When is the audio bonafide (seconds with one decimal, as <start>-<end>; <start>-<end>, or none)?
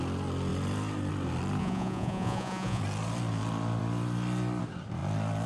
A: 0.0-1.6; 2.8-5.5